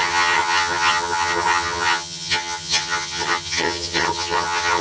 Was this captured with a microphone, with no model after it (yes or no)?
no